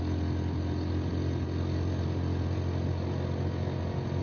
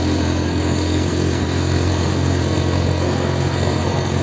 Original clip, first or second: first